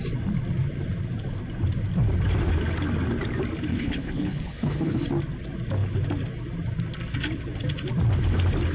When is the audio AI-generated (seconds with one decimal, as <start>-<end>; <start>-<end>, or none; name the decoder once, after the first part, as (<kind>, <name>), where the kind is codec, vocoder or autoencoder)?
3.7-5.0 (codec, HILCodec)